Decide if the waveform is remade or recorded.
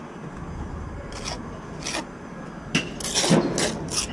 recorded